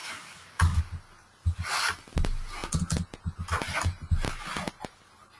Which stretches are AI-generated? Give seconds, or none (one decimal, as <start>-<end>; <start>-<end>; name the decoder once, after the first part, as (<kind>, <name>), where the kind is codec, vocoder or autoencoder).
0.0-0.8 (codec, DAC)